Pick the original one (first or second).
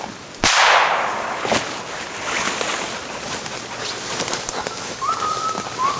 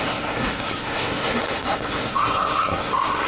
first